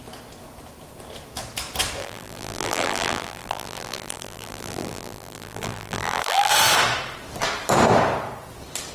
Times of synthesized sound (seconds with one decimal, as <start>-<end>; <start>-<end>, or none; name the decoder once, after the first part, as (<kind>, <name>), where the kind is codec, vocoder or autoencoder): 2.0-6.5 (vocoder, BigVGAN v2)